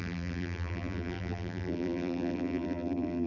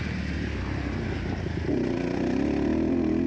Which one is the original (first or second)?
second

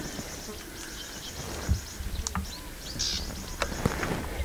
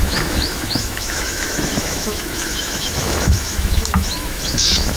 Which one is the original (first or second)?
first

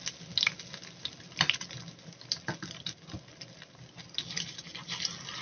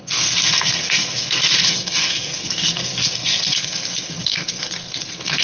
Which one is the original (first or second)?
first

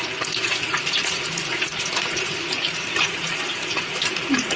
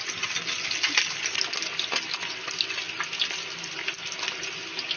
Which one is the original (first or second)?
second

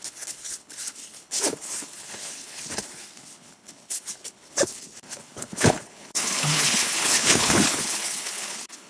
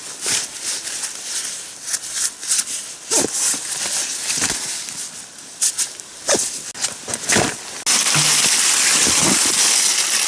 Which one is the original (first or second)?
second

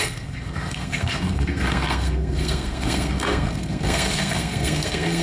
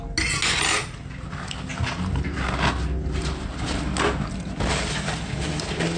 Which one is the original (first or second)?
second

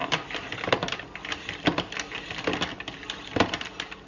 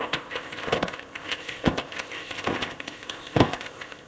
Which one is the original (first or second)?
first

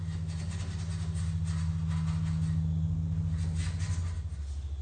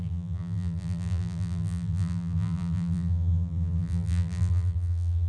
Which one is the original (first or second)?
first